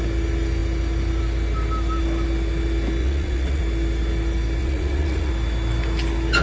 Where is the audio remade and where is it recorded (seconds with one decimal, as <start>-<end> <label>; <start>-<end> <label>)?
0.0-3.0 recorded; 3.0-3.6 remade; 3.6-4.6 recorded; 4.6-5.3 remade; 5.3-6.4 recorded